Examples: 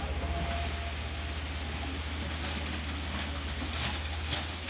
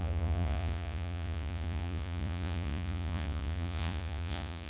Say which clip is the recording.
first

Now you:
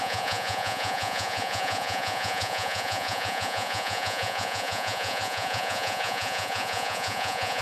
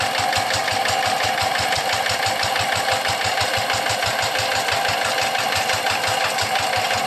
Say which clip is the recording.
second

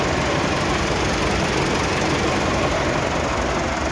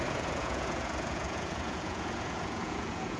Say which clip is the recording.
first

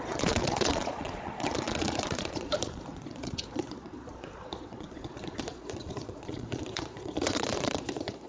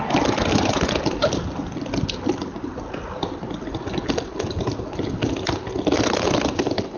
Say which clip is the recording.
second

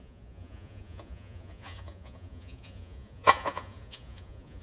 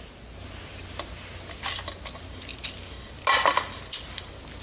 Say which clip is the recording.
second